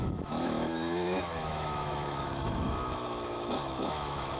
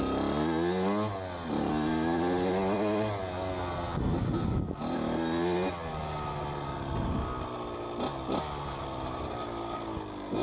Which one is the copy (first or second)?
first